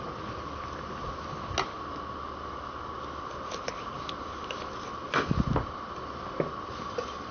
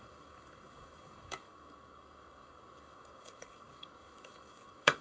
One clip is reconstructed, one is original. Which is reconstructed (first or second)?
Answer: second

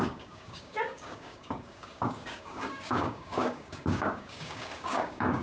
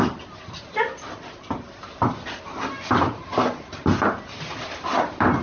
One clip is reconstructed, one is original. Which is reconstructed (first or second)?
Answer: first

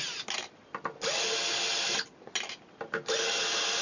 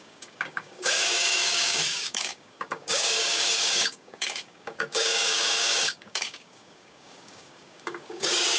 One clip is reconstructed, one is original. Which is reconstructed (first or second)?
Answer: second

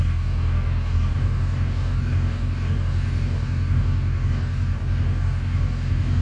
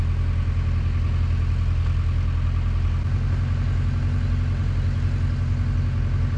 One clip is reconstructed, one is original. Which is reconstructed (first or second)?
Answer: first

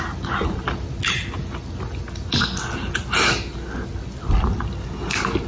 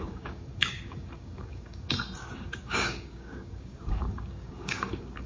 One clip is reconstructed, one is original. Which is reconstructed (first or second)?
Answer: second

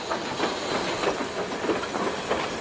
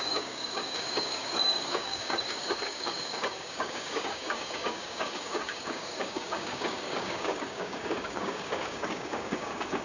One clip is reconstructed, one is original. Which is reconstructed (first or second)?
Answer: second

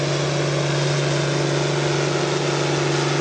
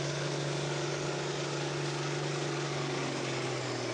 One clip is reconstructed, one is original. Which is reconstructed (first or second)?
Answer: second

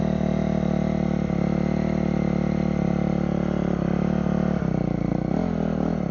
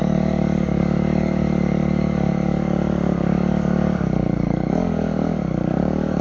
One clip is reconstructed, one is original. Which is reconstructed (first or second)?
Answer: second